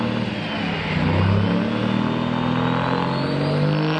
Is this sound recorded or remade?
recorded